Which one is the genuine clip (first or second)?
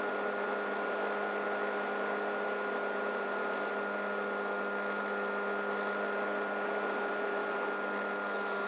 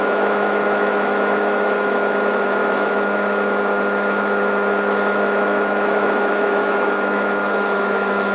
first